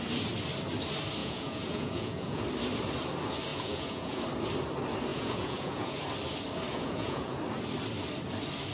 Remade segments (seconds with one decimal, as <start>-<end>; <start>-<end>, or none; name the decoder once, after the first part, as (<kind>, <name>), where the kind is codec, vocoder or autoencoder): 1.2-2.4 (vocoder, Vocos); 3.5-4.2; 5.1-6.0; 6.7-7.4